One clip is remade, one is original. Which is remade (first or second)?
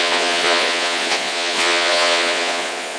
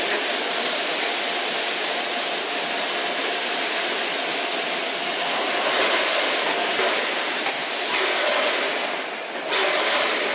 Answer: first